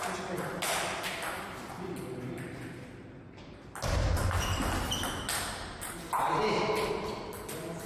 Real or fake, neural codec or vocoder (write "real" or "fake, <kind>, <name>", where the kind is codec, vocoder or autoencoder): real